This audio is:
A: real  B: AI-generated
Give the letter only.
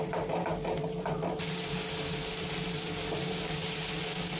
A